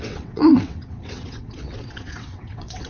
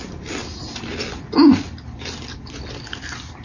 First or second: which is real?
second